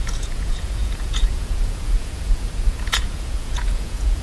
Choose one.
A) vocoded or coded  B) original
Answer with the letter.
A